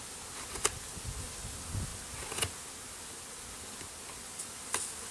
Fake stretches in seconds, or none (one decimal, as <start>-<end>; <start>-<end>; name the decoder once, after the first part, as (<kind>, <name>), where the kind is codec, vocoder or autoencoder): none